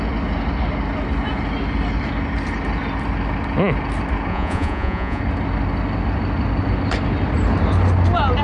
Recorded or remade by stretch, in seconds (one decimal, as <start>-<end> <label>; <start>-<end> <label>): 0.0-4.3 recorded; 4.3-5.2 remade; 5.2-8.4 recorded